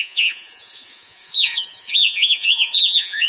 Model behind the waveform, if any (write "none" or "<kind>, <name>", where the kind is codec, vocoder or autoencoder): vocoder, Vocos